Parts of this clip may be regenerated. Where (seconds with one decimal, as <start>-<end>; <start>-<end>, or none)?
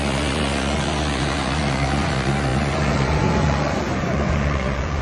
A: 0.0-5.0